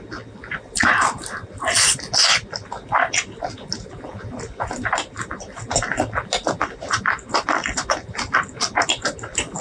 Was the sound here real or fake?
real